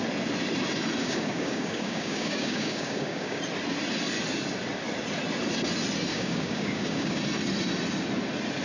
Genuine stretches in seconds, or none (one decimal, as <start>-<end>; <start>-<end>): 0.0-1.0; 3.4-6.1; 7.2-8.6